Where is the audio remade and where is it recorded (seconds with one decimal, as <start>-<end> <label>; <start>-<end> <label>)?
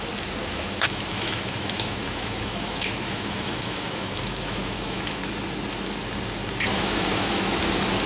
0.0-0.4 recorded; 0.4-5.3 remade; 5.3-6.7 recorded; 6.7-7.6 remade; 7.6-8.1 recorded